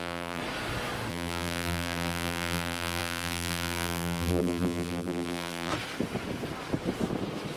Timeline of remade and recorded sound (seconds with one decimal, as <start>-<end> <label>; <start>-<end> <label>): 0.0-0.4 remade; 0.4-1.1 recorded; 1.1-5.7 remade; 5.7-7.6 recorded